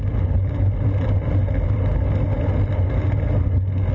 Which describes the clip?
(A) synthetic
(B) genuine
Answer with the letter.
B